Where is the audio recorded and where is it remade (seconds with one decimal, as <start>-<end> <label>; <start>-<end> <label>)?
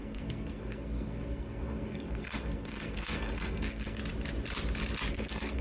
0.0-4.0 remade; 4.0-5.1 recorded; 5.1-5.6 remade